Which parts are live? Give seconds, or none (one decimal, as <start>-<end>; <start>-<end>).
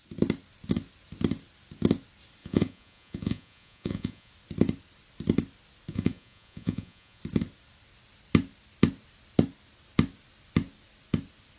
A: 0.0-2.4; 4.3-5.9; 7.2-11.6